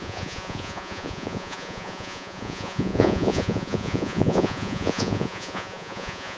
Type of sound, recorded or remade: remade